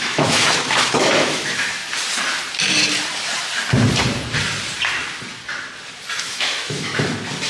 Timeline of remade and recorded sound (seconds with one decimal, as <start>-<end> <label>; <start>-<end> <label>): 0.0-1.8 remade; 1.8-6.2 recorded; 6.2-6.9 remade; 6.9-7.5 recorded